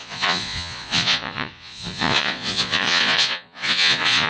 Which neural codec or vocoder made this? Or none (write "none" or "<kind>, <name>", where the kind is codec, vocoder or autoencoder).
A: vocoder, Vocos